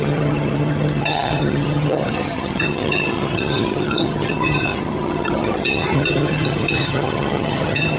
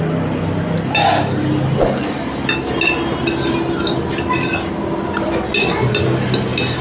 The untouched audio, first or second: second